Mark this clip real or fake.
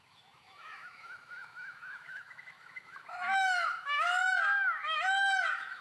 fake